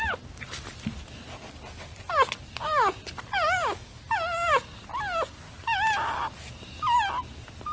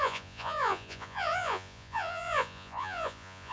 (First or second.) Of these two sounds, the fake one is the second